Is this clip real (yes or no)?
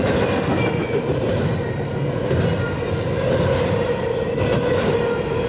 yes